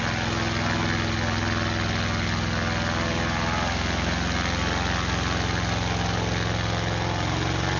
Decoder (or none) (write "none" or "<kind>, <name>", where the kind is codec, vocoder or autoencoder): none